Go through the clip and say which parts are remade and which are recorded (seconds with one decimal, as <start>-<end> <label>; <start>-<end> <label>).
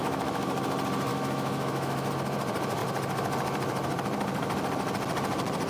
0.0-0.6 remade; 0.6-1.1 recorded; 1.1-2.1 remade; 2.1-5.7 recorded